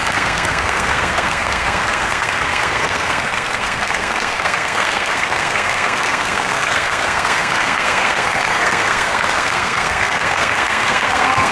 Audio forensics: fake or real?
fake